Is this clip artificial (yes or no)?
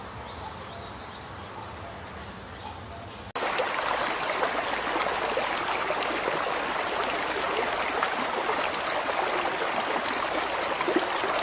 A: no